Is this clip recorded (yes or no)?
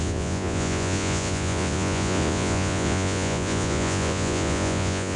no